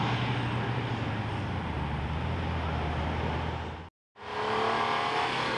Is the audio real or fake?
real